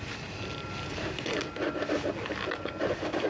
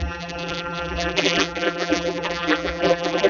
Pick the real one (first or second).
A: first